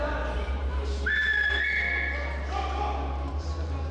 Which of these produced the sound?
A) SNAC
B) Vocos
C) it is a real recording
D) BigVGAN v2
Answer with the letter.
C